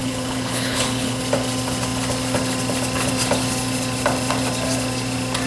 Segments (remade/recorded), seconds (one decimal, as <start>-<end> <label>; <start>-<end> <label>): 0.0-1.2 remade; 1.2-5.5 recorded